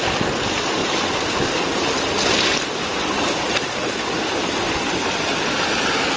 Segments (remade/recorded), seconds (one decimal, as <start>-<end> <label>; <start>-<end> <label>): 0.0-6.2 recorded